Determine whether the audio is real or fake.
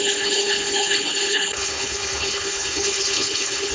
fake